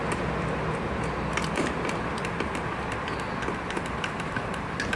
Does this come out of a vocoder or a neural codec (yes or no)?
no